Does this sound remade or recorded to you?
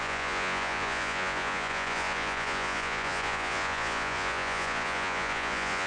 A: remade